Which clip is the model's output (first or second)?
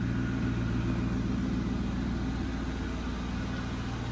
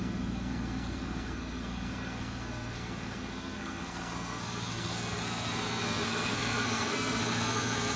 second